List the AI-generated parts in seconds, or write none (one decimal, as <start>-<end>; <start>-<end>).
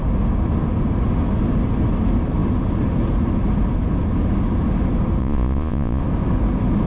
5.2-6.0